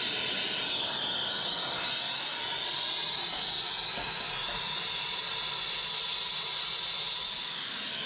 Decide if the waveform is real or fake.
real